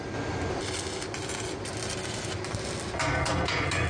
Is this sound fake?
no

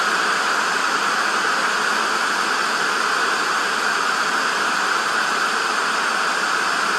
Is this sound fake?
no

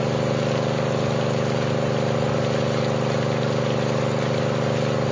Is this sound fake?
no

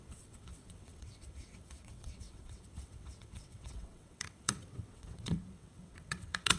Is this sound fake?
yes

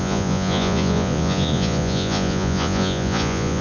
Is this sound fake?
yes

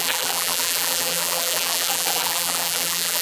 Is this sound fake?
yes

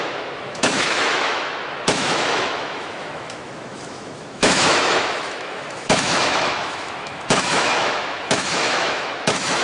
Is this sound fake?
yes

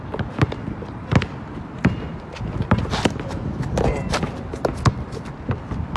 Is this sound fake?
no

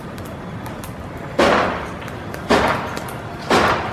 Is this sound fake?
no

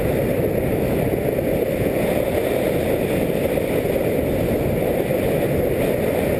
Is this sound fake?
no